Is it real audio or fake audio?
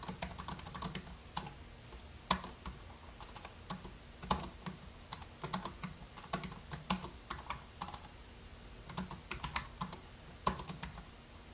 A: real